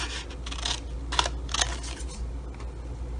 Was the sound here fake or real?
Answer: real